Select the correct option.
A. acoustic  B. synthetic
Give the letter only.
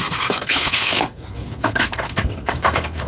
B